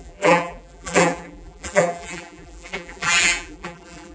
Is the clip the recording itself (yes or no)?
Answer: no